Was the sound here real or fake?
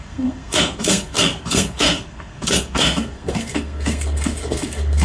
fake